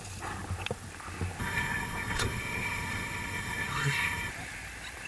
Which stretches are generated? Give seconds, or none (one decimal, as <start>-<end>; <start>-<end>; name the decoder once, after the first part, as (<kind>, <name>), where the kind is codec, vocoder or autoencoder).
1.4-4.3 (codec, SNAC)